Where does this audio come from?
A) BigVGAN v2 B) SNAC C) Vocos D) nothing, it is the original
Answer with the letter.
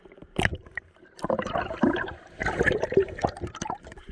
A